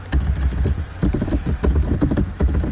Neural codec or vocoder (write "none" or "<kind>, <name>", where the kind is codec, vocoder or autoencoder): none